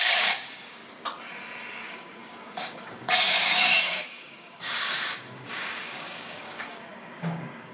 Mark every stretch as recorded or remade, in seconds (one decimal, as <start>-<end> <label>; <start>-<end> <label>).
0.0-0.8 remade; 0.8-1.7 recorded; 1.7-7.7 remade

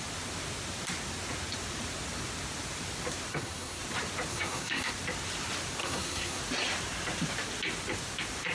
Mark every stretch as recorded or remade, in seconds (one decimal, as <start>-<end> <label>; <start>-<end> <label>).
0.0-3.3 recorded; 3.3-3.8 remade; 3.8-4.3 recorded; 4.3-4.9 remade; 4.9-5.8 recorded; 5.8-6.4 remade; 6.4-8.5 recorded

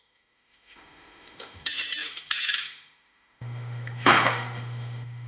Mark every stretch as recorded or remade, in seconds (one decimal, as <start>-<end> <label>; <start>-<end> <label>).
0.0-5.3 remade

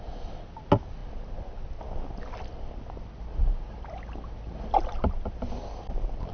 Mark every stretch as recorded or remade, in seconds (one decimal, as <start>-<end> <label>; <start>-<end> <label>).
0.0-6.3 recorded

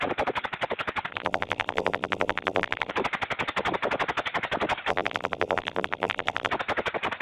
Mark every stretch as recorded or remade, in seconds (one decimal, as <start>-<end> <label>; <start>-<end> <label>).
0.0-1.1 recorded; 1.1-2.9 remade; 2.9-4.9 recorded; 4.9-6.5 remade; 6.5-7.2 recorded

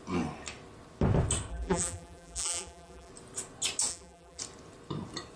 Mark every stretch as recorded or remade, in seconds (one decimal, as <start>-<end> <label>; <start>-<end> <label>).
0.0-1.5 recorded; 1.5-3.1 remade; 3.1-3.9 recorded; 3.9-4.4 remade; 4.4-5.4 recorded

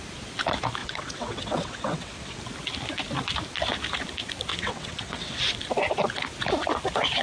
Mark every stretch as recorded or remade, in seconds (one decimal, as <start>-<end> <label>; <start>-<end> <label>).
0.0-0.8 recorded; 0.8-2.4 remade; 2.4-4.5 recorded; 4.5-5.4 remade; 5.4-7.2 recorded

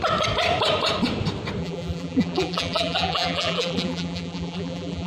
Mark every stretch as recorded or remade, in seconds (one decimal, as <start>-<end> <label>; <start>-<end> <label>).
0.0-1.6 recorded; 1.6-5.1 remade